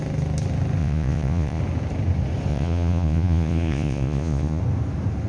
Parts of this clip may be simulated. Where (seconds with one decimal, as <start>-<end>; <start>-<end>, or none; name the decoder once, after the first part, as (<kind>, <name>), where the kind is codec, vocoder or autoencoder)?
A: 0.8-1.6 (vocoder, Vocos); 2.5-4.6